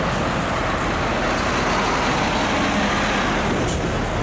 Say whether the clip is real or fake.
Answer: real